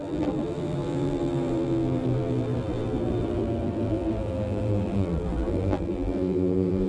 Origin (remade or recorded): remade